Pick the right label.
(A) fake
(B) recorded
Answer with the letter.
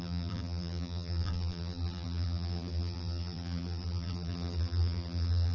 A